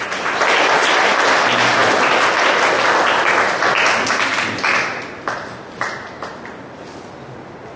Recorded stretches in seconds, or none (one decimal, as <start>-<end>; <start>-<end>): 0.0-7.8